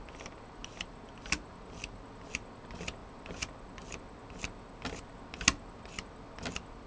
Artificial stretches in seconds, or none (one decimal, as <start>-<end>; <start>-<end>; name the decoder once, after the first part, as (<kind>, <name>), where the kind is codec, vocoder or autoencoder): none